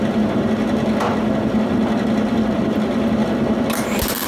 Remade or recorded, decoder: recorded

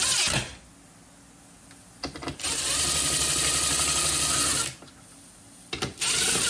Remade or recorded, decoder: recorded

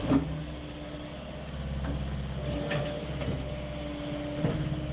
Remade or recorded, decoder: recorded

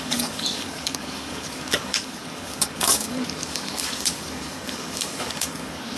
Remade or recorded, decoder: remade, codec, DAC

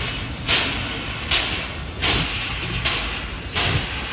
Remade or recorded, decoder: recorded